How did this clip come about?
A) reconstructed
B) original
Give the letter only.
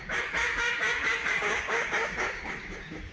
A